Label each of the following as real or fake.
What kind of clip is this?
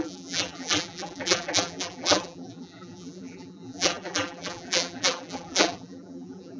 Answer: fake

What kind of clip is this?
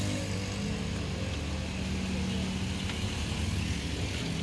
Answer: real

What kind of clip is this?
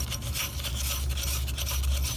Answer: real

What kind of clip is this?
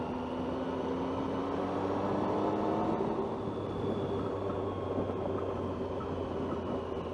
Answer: real